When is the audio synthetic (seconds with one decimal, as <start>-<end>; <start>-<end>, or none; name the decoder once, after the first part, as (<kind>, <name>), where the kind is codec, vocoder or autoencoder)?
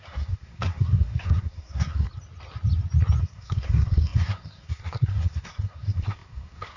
0.0-2.1 (codec, SNAC); 3.2-6.8